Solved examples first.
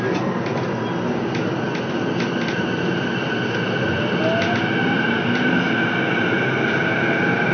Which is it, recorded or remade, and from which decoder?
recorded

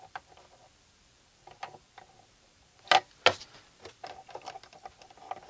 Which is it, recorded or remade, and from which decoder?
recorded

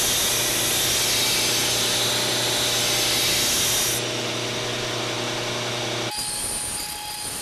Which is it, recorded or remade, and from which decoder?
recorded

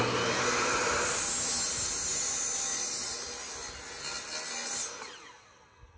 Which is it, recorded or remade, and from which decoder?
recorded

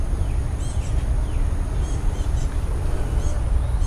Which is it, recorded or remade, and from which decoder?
recorded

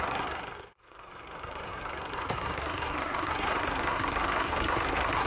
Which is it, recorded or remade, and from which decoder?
remade, codec, SNAC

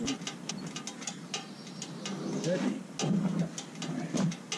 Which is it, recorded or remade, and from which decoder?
recorded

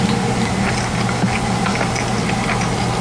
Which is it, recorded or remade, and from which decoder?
recorded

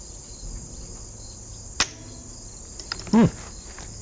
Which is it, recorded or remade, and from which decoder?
recorded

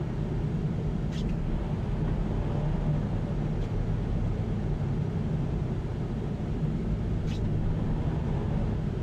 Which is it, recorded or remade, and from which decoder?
recorded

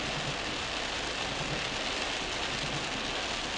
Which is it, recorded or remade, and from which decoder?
recorded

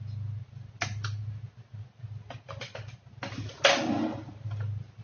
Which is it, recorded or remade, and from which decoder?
recorded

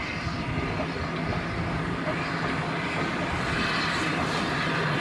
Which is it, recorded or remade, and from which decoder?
recorded